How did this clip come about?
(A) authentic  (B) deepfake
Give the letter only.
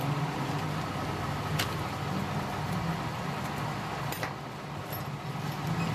A